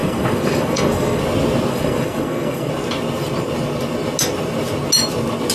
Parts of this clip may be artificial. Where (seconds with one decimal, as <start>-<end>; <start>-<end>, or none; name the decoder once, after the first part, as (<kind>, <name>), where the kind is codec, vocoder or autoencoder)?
0.0-1.2 (codec, SNAC); 1.7-2.7